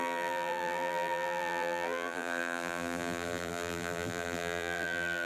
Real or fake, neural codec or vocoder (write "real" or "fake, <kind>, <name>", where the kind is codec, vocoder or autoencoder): fake, vocoder, BigVGAN v2